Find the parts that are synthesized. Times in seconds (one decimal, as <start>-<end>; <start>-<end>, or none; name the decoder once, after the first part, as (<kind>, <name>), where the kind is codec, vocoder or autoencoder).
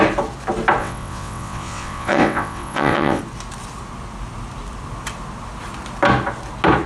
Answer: 0.8-3.2 (vocoder, WaveNeXt)